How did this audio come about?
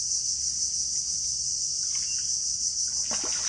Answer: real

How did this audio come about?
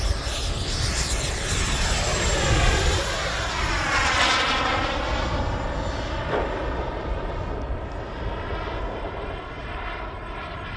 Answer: real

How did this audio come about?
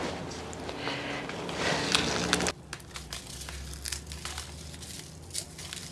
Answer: real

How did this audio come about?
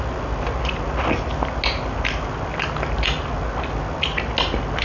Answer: real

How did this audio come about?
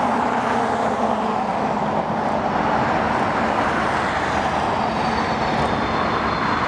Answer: real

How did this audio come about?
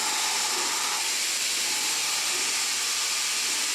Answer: real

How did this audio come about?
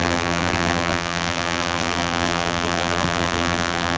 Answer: fake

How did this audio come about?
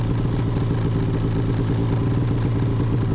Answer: real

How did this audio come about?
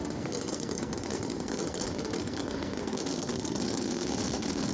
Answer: fake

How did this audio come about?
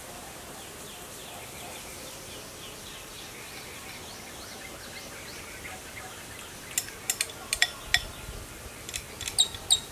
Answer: real